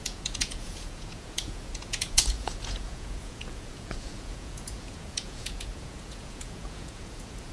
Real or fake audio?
fake